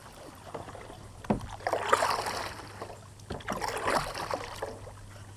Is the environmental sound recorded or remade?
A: recorded